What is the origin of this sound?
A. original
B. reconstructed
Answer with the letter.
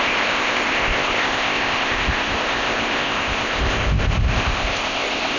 B